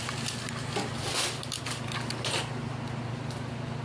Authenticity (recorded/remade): recorded